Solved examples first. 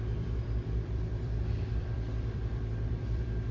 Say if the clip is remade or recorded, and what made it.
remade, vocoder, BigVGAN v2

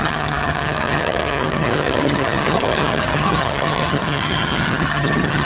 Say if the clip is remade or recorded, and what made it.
remade, vocoder, HiFi-GAN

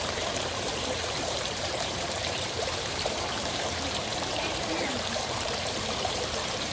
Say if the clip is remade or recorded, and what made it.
remade, vocoder, BigVGAN v2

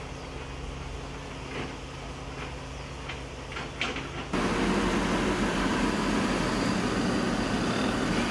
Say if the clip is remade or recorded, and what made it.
recorded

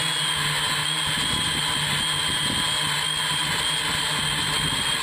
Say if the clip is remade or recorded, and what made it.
recorded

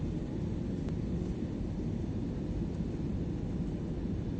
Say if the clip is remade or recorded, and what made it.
recorded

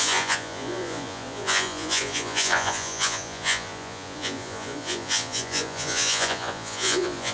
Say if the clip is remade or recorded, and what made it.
remade, vocoder, Vocos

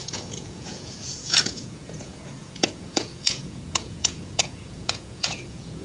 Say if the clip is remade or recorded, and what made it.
remade, vocoder, Vocos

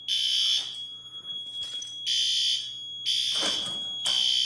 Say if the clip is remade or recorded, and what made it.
recorded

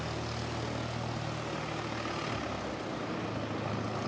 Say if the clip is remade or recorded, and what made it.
recorded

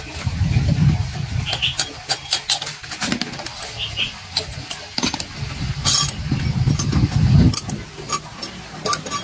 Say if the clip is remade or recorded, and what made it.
recorded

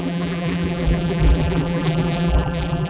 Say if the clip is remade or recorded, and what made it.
remade, vocoder, BigVGAN v2